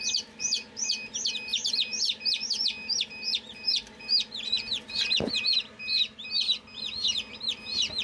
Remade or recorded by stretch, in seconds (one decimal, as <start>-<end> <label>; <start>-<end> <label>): 0.0-8.0 recorded